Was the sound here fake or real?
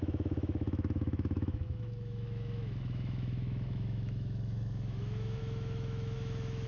fake